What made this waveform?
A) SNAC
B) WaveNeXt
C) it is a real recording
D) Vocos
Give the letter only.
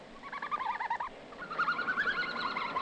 C